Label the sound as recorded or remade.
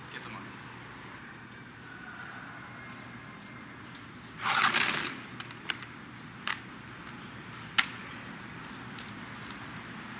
recorded